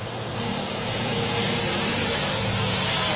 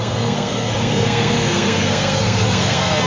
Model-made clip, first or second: second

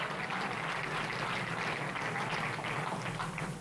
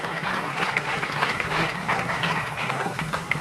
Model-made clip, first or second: second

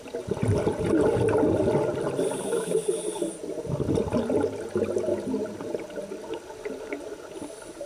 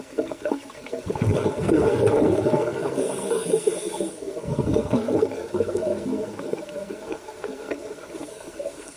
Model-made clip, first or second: second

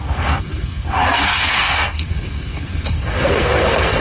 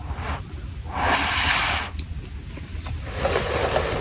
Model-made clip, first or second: first